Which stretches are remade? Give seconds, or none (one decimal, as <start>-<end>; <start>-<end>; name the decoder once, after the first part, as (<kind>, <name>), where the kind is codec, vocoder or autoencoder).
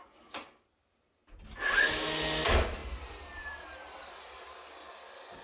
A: none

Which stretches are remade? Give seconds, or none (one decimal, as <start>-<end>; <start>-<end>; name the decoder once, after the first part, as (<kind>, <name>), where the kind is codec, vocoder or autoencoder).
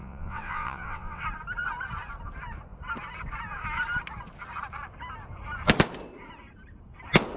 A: 0.0-1.2 (vocoder, WaveNeXt)